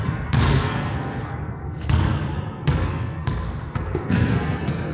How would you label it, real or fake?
fake